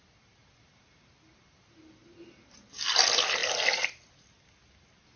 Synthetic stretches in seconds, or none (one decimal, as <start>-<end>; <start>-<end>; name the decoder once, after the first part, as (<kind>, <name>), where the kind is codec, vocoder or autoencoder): none